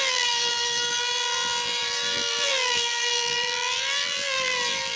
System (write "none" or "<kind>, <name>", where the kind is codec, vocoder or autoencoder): vocoder, BigVGAN v2